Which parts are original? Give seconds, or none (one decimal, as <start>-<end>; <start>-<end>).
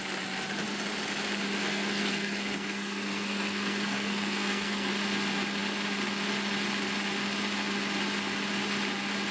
0.0-1.6; 4.9-9.3